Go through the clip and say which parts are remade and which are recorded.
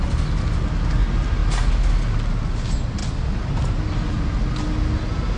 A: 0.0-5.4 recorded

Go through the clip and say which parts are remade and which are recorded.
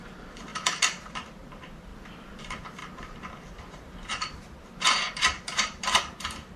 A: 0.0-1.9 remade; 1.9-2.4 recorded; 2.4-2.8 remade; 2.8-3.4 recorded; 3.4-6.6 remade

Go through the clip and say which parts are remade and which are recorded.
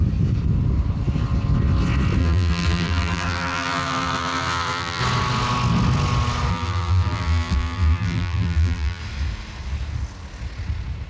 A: 0.0-2.2 recorded; 2.2-5.0 remade; 5.0-6.5 recorded; 6.5-9.0 remade; 9.0-11.1 recorded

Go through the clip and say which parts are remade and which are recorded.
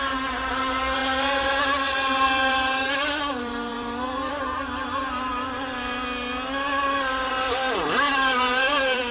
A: 0.0-5.3 remade; 5.3-7.3 recorded; 7.3-9.1 remade